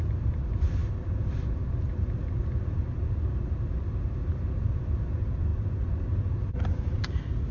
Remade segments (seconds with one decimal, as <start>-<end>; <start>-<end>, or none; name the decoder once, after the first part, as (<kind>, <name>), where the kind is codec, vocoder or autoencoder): none